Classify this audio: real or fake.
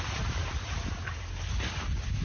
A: real